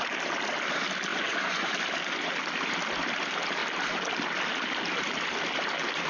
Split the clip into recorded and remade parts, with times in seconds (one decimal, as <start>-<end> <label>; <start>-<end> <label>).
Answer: 0.0-1.1 recorded; 1.1-1.7 remade; 1.7-6.1 recorded